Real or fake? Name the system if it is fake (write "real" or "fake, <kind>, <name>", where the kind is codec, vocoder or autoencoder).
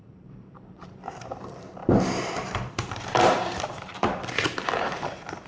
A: fake, vocoder, BigVGAN v2